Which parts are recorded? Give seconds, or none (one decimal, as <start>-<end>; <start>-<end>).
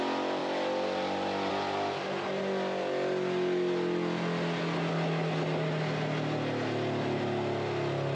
0.0-8.2